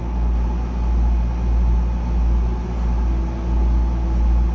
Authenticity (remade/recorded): recorded